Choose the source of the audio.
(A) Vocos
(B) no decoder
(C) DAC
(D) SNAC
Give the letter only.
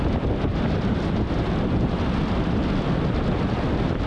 B